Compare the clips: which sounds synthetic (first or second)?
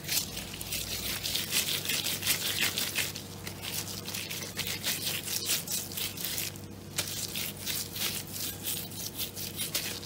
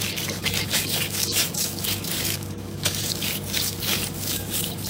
second